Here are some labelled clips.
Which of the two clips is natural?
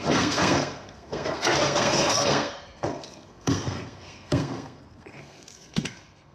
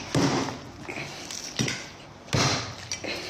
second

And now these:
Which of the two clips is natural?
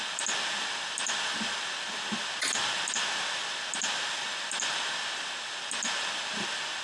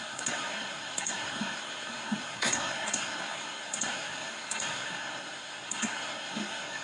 first